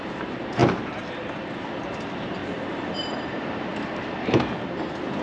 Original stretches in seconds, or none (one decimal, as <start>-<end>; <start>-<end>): 0.6-1.8; 2.4-2.9; 3.7-5.2